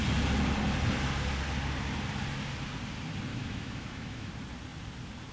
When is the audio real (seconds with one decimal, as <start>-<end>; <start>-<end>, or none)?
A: 0.0-3.3; 4.3-5.3